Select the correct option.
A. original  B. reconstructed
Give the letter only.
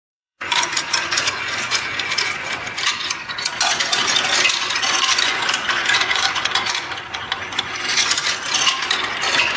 B